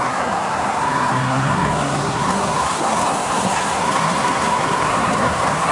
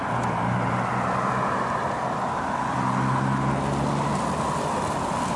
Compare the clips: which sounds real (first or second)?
second